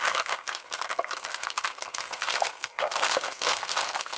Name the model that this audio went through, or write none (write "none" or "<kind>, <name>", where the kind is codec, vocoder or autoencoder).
codec, SNAC